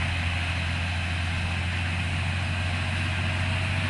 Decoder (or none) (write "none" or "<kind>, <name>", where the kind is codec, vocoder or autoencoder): none